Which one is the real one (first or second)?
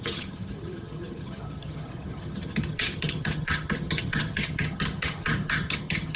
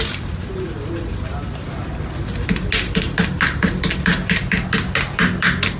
second